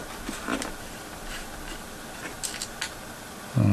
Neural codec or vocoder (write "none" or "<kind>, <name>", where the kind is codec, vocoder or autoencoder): none